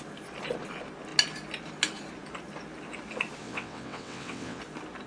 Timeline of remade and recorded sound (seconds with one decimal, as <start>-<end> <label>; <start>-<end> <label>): 0.0-3.4 recorded; 3.4-4.6 remade; 4.6-5.1 recorded